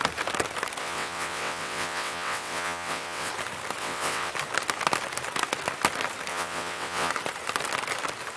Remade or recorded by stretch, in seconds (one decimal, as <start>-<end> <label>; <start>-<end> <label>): 0.0-0.8 recorded; 0.8-3.3 remade; 3.3-3.8 recorded; 3.8-4.3 remade; 4.3-6.3 recorded; 6.3-7.1 remade; 7.1-8.4 recorded

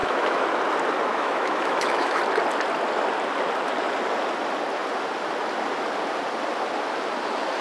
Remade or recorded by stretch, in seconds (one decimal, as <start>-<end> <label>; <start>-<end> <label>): 0.0-0.5 remade; 0.5-1.1 recorded; 1.1-2.2 remade; 2.2-7.6 recorded